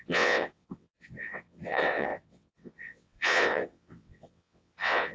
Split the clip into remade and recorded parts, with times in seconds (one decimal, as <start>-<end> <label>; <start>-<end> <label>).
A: 0.0-5.1 remade